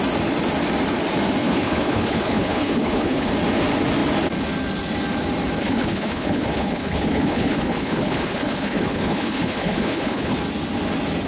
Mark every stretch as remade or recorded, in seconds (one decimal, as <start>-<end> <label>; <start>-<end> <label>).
0.0-1.4 recorded; 1.4-3.3 remade; 3.3-5.6 recorded; 5.6-10.4 remade; 10.4-11.3 recorded